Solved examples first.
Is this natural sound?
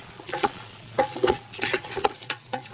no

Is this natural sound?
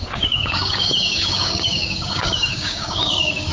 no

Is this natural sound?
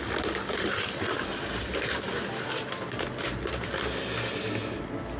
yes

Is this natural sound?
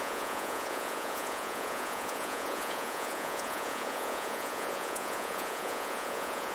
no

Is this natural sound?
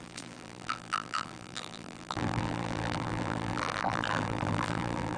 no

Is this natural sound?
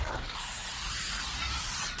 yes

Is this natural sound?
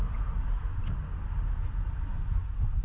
yes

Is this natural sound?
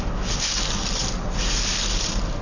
yes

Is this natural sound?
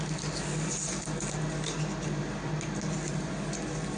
yes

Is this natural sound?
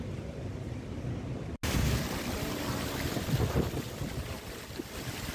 yes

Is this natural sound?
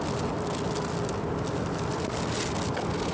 yes